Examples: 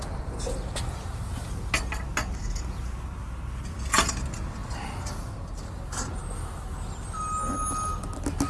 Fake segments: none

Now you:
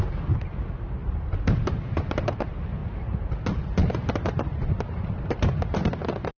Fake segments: 1.0-2.4 (vocoder, BigVGAN v2); 2.8-3.3; 3.8-5.9

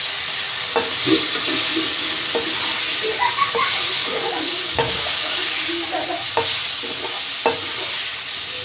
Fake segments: 4.0-5.9 (codec, DAC)

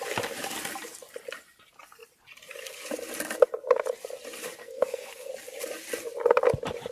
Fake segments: 4.6-5.3 (codec, SNAC)

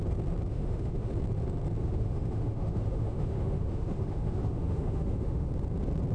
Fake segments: 0.5-1.1 (autoencoder, DAC-VAE); 1.8-5.5

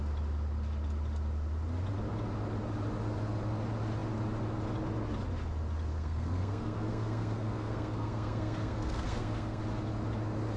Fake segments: 5.9-9.6 (codec, SNAC)

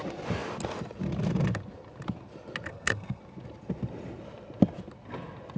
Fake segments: 2.7-3.2 (codec, SNAC)

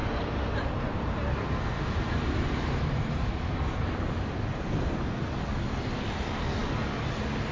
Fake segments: 0.0-3.7 (vocoder, BigVGAN v2)